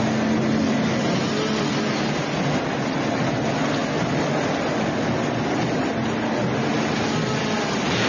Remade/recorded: recorded